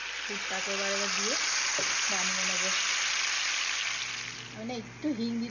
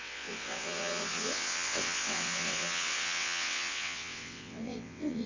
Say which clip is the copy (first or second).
second